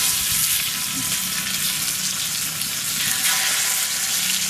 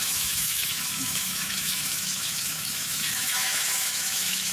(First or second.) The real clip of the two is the first